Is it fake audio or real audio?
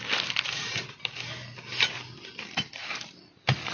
real